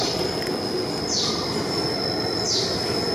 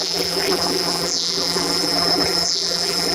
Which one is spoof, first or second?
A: second